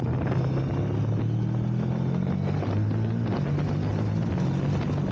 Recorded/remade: recorded